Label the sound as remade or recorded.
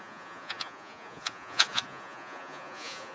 remade